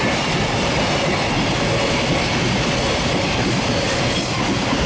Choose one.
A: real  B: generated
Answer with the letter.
A